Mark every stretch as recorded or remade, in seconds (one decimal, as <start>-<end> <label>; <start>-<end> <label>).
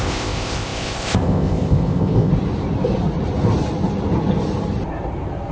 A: 0.0-2.3 remade; 2.3-5.5 recorded